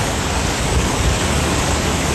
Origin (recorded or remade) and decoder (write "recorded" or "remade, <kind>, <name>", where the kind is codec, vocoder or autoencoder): remade, codec, DAC